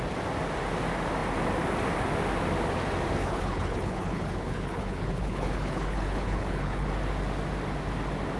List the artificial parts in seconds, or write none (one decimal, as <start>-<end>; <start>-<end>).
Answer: 3.2-6.9

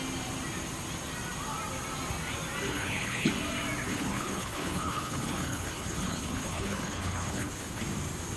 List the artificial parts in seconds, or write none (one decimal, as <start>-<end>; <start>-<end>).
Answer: 2.7-3.3; 3.9-7.8

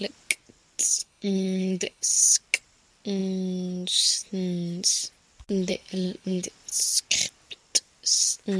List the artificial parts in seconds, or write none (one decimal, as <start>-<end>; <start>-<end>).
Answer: 1.0-2.0; 5.7-6.5

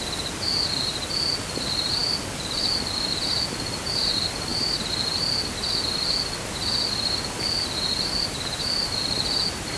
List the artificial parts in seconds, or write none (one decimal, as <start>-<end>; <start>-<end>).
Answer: none